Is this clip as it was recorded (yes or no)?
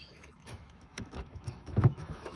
no